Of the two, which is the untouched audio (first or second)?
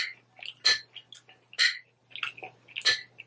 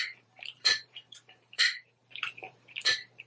first